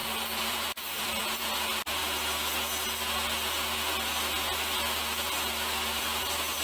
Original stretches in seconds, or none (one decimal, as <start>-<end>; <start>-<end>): 0.0-0.5; 2.0-6.0